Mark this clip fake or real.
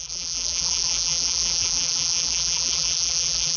fake